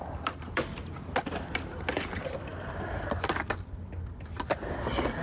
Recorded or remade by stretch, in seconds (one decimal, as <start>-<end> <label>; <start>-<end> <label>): 0.0-5.2 recorded